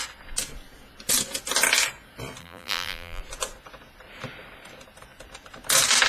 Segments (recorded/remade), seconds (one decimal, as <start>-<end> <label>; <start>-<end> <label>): 0.0-2.4 recorded; 2.4-3.2 remade; 3.2-6.1 recorded